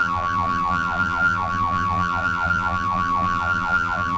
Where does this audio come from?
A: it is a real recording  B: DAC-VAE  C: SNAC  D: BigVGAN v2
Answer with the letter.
D